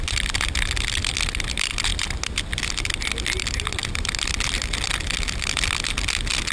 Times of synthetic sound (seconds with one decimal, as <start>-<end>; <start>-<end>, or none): none